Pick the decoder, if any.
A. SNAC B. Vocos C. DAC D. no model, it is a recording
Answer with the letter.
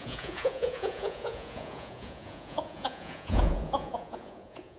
B